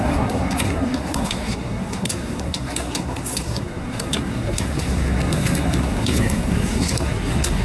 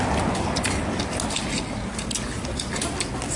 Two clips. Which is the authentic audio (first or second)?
second